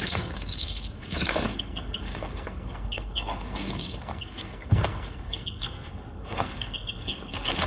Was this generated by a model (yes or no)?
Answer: yes